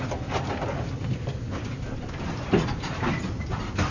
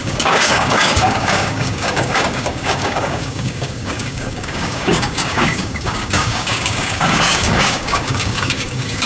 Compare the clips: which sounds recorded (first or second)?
first